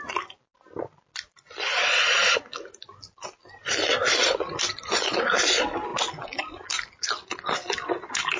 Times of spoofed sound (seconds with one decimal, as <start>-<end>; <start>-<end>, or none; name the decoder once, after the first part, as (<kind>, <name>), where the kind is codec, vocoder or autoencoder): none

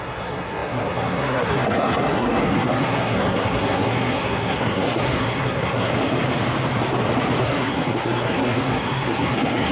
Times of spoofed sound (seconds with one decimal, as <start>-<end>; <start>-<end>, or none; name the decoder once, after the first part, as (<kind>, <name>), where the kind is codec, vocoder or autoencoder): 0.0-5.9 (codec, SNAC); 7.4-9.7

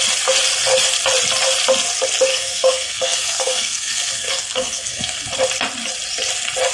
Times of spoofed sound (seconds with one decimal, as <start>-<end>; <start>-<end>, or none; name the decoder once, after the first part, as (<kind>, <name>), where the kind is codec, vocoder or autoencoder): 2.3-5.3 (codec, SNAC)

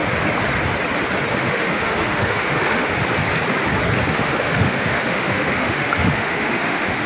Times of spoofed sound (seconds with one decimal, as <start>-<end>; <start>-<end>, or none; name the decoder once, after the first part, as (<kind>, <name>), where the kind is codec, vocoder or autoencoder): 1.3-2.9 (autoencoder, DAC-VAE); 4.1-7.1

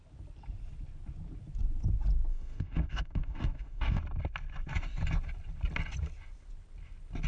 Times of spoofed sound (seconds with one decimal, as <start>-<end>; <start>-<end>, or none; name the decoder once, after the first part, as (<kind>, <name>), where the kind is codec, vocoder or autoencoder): 2.3-4.0 (autoencoder, DAC-VAE)

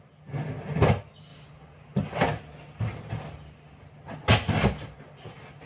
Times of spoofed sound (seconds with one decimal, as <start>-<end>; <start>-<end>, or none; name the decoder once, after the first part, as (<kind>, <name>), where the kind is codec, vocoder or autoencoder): none

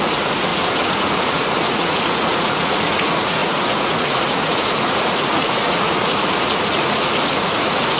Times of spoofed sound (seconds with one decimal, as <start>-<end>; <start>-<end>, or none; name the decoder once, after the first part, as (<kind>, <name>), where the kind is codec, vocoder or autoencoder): 0.0-8.0 (vocoder, Vocos)